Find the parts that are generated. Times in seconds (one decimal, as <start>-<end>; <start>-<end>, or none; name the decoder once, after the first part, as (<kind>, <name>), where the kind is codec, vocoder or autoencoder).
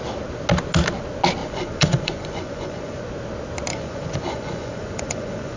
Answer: 1.4-3.0 (vocoder, Vocos); 3.7-5.6